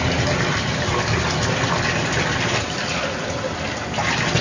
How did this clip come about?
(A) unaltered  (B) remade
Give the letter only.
A